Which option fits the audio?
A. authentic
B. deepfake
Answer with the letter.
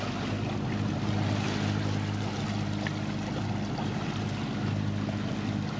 A